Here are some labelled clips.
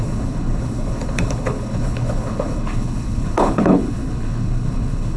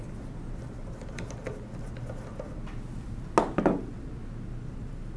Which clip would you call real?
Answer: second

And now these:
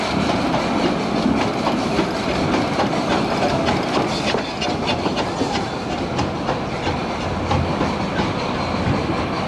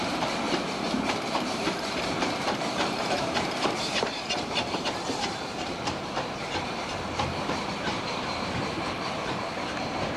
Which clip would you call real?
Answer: first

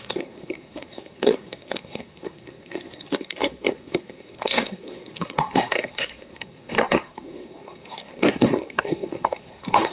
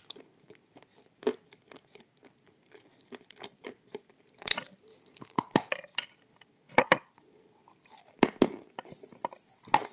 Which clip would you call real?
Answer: second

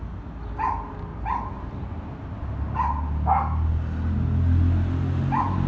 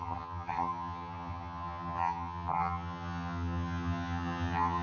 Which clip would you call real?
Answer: first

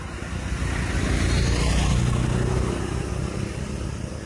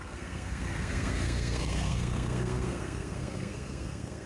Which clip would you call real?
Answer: first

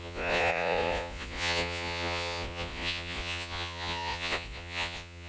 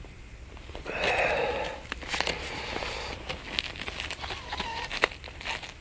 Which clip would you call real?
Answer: second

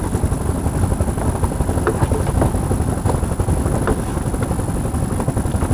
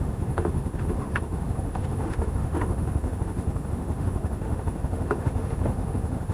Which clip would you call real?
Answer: first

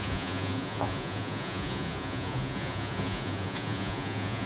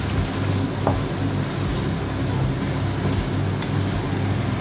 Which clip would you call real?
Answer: second